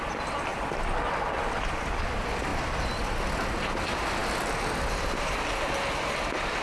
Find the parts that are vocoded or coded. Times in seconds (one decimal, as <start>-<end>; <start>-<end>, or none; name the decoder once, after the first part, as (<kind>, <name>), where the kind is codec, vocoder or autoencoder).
none